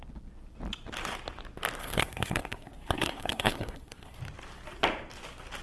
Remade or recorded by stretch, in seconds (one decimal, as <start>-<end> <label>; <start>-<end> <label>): 0.0-1.8 recorded; 1.8-4.2 remade; 4.2-5.6 recorded